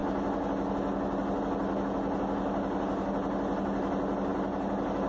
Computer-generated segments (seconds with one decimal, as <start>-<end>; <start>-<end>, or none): none